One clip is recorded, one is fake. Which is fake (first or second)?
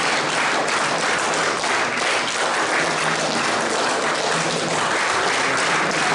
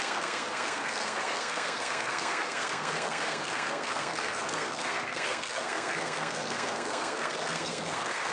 second